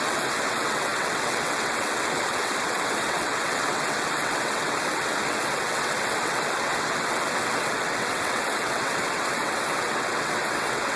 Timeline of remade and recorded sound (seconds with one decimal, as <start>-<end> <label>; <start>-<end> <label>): 0.0-11.0 remade